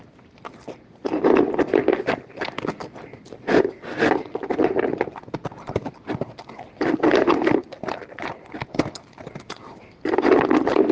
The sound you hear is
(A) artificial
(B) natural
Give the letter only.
B